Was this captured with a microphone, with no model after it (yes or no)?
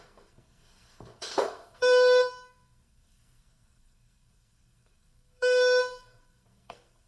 no